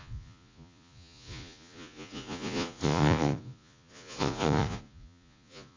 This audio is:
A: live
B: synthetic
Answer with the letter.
B